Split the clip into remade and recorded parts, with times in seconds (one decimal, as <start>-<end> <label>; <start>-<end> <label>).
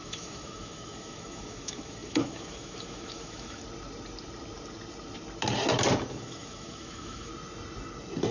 0.0-3.6 remade; 3.6-6.1 recorded; 6.1-7.3 remade; 7.3-8.3 recorded